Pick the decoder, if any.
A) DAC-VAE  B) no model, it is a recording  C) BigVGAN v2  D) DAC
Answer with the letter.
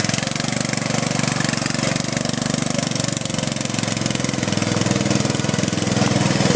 B